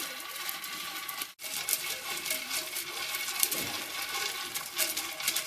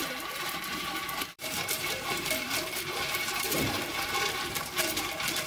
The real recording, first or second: first